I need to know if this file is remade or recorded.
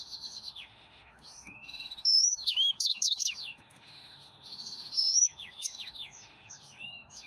remade